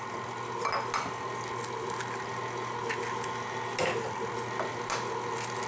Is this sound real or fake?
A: real